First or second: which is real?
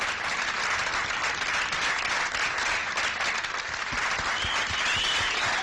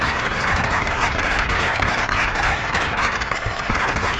first